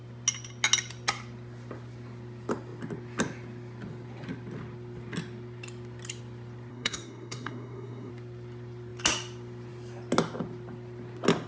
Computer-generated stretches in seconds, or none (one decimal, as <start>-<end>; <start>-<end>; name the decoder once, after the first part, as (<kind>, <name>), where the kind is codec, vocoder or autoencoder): 6.7-8.1 (codec, SNAC)